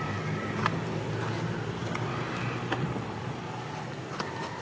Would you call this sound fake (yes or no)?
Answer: no